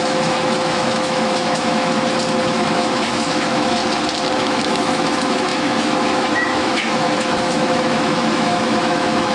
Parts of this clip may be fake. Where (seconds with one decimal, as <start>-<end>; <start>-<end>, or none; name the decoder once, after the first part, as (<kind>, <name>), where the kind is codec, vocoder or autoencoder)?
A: 0.0-1.9 (autoencoder, DAC-VAE); 2.4-3.8; 4.4-9.3